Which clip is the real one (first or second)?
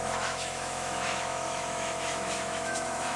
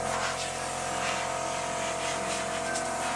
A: second